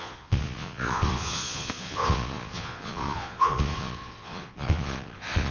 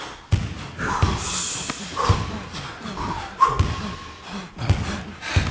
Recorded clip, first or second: second